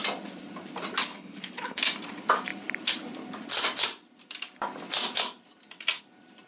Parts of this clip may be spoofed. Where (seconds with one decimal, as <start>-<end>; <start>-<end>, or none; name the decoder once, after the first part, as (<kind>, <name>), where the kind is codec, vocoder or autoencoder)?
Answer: 1.0-1.8 (codec, HILCodec)